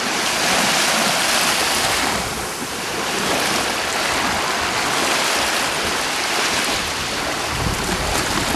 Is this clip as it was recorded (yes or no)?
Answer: yes